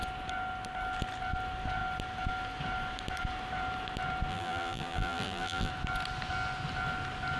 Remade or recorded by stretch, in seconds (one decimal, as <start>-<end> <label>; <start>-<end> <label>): 0.0-4.3 recorded; 4.3-5.7 remade; 5.7-7.4 recorded